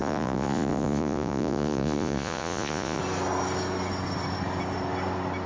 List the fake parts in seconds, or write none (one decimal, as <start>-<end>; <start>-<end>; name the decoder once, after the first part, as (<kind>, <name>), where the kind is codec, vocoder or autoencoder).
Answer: 0.0-3.0 (vocoder, Vocos)